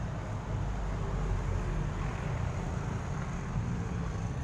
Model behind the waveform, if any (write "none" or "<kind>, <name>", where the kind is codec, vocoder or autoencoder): none